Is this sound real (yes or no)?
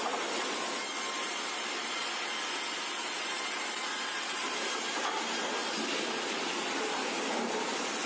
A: yes